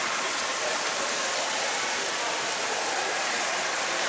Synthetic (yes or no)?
no